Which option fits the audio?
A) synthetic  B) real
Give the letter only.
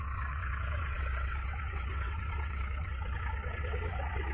A